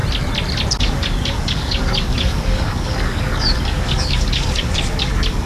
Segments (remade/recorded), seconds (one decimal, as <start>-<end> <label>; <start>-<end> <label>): 0.0-0.8 recorded; 0.8-5.5 remade